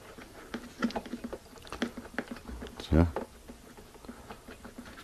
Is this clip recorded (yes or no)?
yes